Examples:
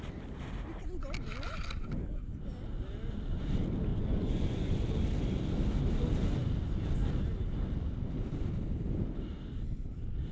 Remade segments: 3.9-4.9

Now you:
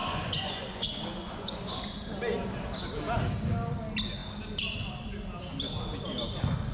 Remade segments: 0.0-1.8

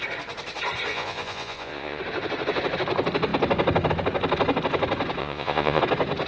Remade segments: 0.9-2.0; 5.2-5.8

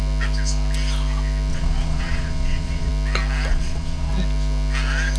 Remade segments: 1.5-2.9; 3.5-4.1

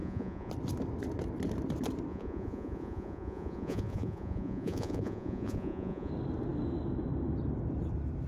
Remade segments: 0.0-0.5; 2.1-6.1